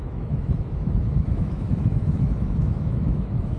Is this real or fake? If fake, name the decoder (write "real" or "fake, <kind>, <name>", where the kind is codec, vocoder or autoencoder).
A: fake, autoencoder, DAC-VAE